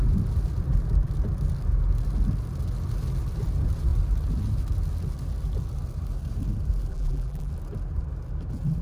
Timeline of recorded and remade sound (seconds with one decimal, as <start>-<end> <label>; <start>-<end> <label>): 0.0-6.9 recorded; 6.9-7.5 remade; 7.5-8.8 recorded